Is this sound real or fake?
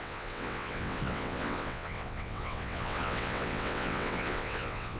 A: fake